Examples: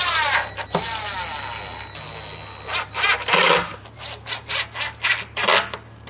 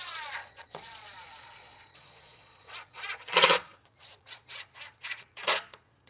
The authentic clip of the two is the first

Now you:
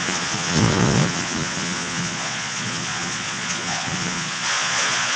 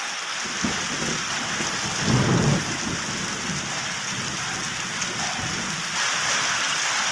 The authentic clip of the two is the second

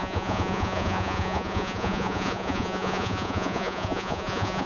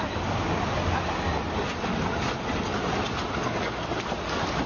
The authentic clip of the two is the second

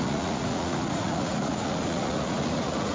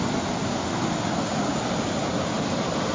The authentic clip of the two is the second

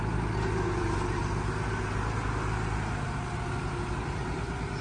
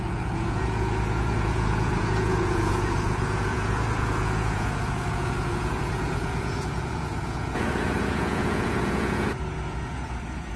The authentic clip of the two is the first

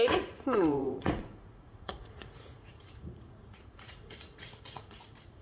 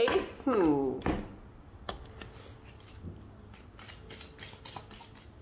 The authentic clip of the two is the second